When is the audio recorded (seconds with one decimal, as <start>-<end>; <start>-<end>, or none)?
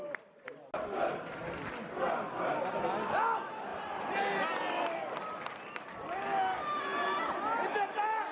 0.0-3.7; 5.9-8.3